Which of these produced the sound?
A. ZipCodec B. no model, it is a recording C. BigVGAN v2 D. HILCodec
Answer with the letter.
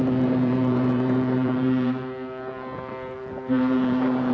C